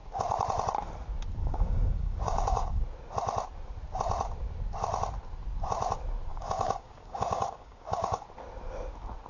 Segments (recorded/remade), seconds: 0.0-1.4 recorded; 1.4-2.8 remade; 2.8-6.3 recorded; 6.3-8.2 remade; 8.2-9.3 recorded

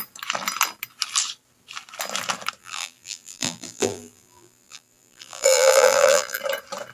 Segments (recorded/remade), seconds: 0.0-2.6 recorded; 2.6-6.4 remade; 6.4-6.9 recorded

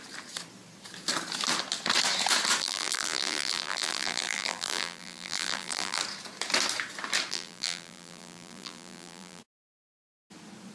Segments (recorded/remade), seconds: 0.0-2.6 recorded; 2.6-6.0 remade; 6.0-7.3 recorded; 7.3-9.4 remade; 9.4-10.7 recorded